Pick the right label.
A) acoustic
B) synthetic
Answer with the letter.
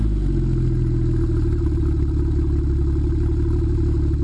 A